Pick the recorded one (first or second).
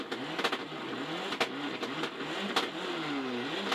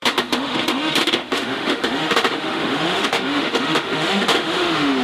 first